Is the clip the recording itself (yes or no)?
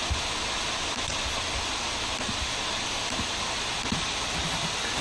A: yes